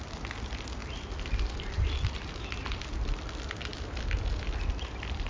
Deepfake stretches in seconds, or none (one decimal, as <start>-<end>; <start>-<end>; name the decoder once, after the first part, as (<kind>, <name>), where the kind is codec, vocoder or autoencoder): 0.8-4.0 (vocoder, BigVGAN v2)

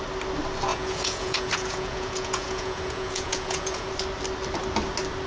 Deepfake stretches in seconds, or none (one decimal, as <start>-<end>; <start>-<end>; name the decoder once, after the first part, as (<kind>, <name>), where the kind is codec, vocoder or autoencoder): 0.7-3.9 (vocoder, Vocos)